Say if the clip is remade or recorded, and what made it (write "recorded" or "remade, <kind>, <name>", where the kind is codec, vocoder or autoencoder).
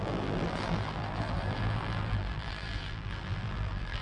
remade, vocoder, BigVGAN v2